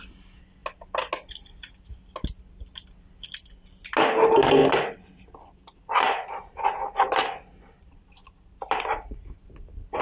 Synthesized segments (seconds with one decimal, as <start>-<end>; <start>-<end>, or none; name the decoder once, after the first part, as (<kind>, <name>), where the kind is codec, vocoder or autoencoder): 4.6-9.3 (vocoder, BigVGAN v2)